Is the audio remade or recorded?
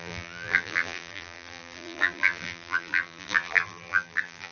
remade